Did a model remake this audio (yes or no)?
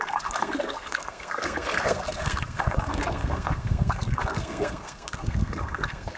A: yes